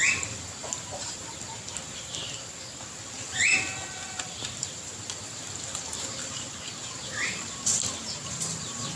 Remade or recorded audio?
remade